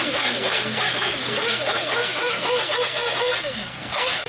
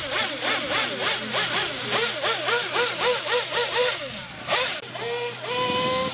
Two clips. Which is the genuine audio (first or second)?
second